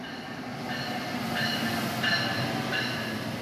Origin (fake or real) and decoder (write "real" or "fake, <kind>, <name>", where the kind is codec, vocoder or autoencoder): real